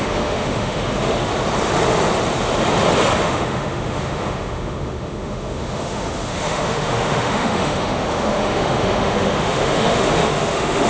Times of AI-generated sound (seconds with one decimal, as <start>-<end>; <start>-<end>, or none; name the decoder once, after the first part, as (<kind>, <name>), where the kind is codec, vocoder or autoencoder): 0.0-1.3 (autoencoder, DAC-VAE); 3.2-10.9